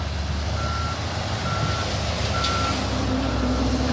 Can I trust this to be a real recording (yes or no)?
yes